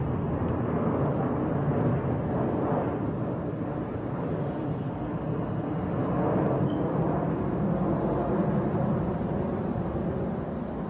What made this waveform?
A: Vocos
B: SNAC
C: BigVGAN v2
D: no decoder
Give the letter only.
D